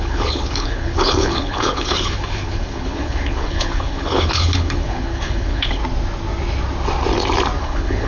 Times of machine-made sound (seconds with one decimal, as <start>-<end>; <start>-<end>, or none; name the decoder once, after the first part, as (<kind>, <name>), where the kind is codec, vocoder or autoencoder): 0.0-5.8 (codec, HILCodec); 7.6-8.1